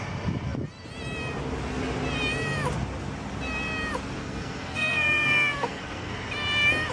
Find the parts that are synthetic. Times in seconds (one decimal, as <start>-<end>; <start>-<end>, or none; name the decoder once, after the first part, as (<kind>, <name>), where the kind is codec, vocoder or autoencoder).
4.2-6.1 (codec, SNAC)